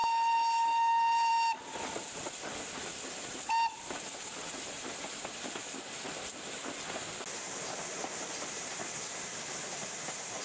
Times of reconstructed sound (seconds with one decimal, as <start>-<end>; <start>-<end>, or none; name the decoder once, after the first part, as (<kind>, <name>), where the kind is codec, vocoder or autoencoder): none